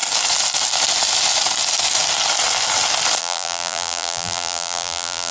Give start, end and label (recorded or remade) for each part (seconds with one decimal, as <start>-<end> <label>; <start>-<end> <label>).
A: 0.0-3.2 recorded; 3.2-5.3 remade